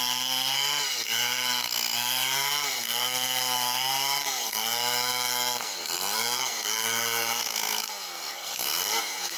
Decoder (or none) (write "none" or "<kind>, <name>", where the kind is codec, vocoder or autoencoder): codec, SNAC